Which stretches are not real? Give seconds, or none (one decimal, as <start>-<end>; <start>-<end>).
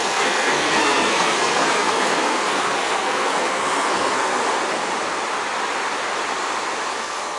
0.0-4.4; 6.9-7.4